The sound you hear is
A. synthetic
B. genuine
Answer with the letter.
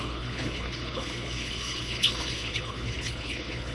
A